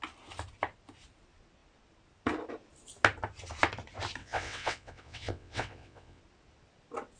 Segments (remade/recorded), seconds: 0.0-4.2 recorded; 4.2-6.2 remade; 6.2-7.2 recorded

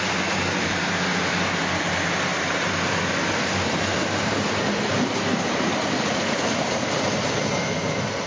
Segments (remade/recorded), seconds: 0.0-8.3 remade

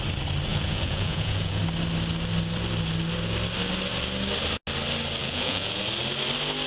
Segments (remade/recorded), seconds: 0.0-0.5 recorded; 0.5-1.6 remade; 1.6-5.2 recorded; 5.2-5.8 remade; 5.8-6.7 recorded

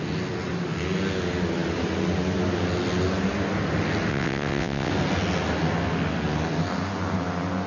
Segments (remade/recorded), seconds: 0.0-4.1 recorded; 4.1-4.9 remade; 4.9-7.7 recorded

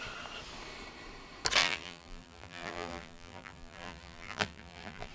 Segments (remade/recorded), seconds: 0.0-1.6 recorded; 1.6-5.1 remade

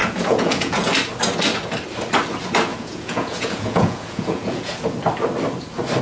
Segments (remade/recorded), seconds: 0.0-0.9 remade; 0.9-2.7 recorded; 2.7-4.7 remade; 4.7-6.0 recorded

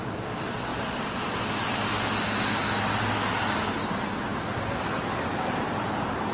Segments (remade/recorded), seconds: 0.0-5.3 recorded; 5.3-6.3 remade

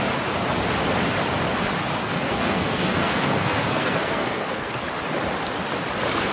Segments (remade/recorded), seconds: 0.0-2.0 recorded; 2.0-4.7 remade; 4.7-6.3 recorded